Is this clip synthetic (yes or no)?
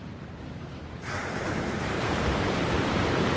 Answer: yes